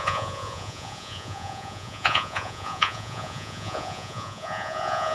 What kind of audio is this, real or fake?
fake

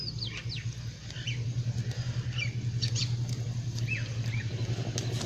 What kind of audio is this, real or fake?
real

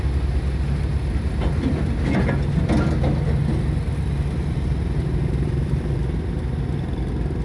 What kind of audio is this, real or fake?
real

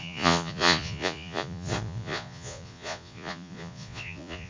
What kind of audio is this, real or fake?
fake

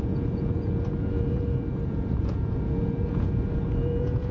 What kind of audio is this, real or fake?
fake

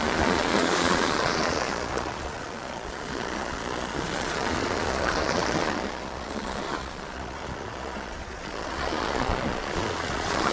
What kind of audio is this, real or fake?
fake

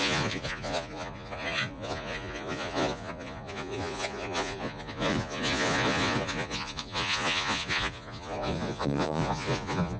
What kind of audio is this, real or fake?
fake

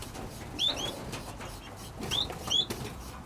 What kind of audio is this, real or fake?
real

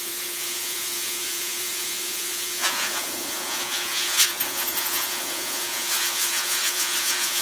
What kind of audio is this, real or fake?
fake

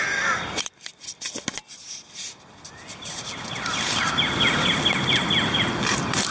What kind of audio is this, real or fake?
real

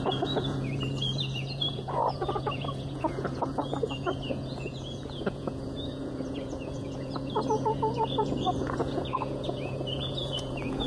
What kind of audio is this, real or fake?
fake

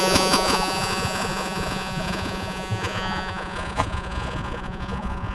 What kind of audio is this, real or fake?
fake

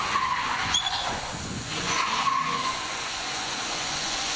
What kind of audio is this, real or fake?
fake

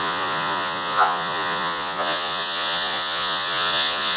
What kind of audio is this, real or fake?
fake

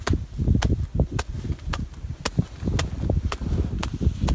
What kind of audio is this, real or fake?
real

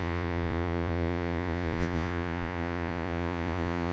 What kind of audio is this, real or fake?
fake